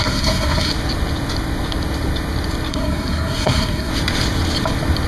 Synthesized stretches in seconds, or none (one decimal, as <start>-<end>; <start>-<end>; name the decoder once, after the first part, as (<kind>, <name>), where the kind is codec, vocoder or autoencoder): 0.0-0.7 (codec, SNAC); 2.7-3.9